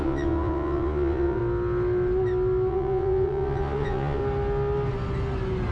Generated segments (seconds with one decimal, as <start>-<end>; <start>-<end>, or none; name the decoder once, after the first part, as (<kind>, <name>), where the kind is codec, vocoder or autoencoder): 0.0-1.4 (vocoder, Vocos); 2.7-4.2